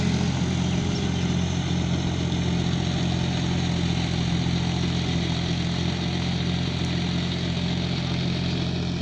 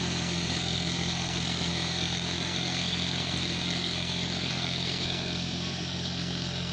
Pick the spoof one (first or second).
second